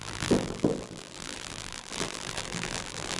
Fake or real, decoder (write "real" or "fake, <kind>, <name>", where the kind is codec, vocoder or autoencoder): fake, vocoder, BigVGAN v2